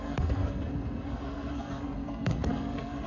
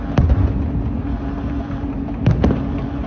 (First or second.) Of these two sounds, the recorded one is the second